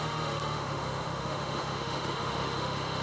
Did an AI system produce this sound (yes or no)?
yes